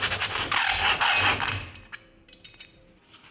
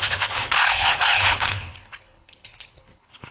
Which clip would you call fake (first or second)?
second